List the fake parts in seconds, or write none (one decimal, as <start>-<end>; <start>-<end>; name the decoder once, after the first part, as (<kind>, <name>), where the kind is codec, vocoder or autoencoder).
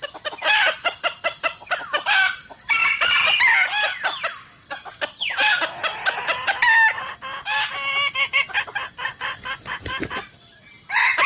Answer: 4.9-5.6 (vocoder, BigVGAN v2)